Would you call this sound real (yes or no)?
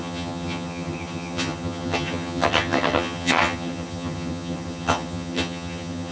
no